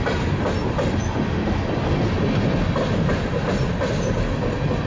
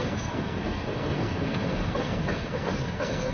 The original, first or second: first